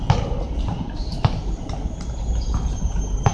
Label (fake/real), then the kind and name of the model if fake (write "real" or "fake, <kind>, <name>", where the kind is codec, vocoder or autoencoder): real